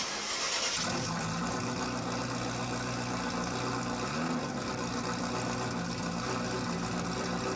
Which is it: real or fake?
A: real